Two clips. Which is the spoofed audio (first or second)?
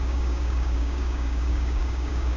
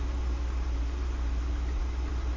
first